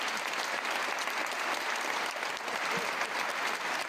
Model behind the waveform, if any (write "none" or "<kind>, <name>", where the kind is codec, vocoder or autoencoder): none